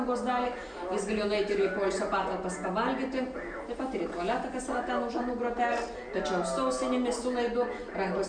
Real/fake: real